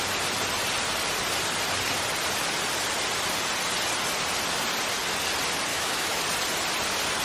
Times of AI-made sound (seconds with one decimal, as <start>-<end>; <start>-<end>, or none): 5.7-6.2